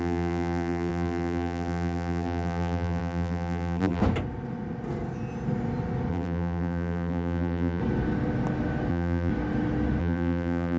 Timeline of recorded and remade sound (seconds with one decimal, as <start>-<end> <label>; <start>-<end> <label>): 0.0-4.0 remade; 4.0-6.1 recorded; 6.1-7.8 remade; 7.8-8.9 recorded; 8.9-9.3 remade; 9.3-10.0 recorded; 10.0-10.8 remade